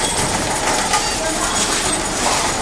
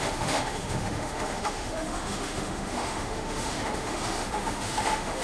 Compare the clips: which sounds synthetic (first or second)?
second